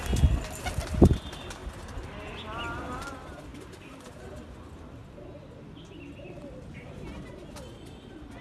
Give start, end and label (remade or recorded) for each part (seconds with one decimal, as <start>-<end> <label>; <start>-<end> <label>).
0.0-8.4 recorded